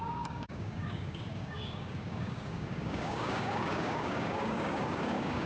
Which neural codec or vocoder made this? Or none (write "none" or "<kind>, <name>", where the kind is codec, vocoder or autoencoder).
codec, DAC